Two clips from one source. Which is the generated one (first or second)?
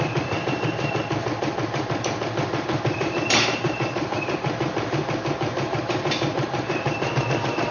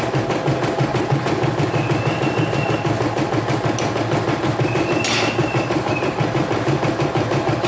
first